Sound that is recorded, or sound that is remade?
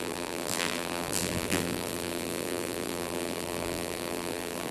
remade